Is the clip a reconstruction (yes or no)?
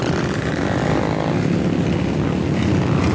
no